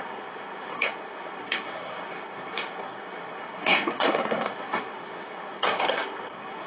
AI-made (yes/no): yes